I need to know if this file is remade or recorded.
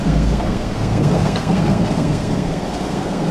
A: remade